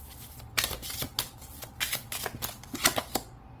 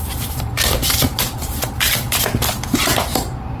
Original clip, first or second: first